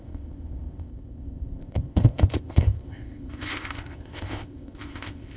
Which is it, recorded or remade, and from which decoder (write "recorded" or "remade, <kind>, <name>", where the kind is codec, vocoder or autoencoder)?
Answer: remade, codec, ZipCodec